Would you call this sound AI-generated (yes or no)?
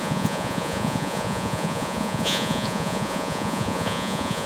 yes